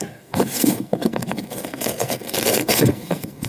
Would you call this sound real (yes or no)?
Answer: no